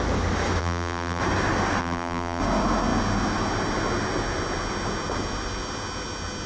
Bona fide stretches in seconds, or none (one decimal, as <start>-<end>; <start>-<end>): 0.0-0.6; 1.2-1.8; 2.4-6.5